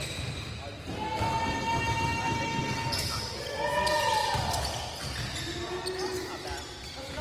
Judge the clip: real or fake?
real